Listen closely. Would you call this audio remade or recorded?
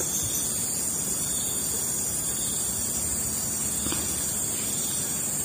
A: recorded